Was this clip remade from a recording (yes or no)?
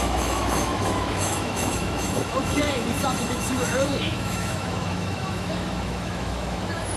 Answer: yes